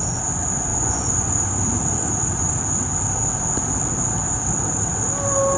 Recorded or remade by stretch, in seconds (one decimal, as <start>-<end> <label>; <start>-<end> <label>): 0.0-0.7 recorded; 0.7-1.3 remade; 1.3-5.6 recorded